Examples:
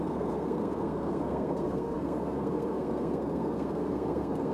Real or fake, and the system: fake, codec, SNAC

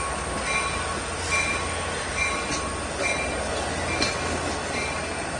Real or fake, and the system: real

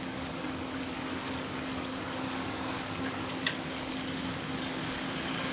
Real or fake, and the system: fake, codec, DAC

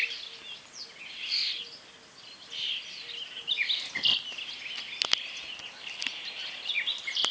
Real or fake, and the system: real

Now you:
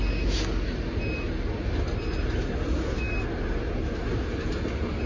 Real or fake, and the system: real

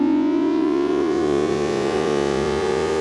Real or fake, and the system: fake, vocoder, Vocos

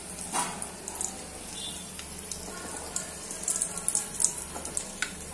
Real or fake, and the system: real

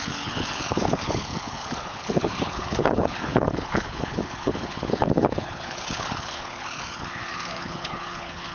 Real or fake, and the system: fake, codec, HILCodec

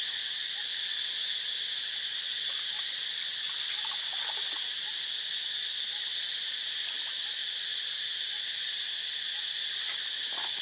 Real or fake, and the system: real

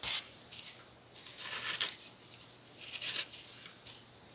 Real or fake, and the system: real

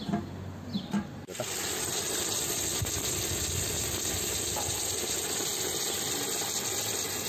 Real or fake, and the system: real